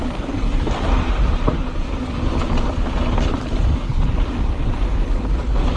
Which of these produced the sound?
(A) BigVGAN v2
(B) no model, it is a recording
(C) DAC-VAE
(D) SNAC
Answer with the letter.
B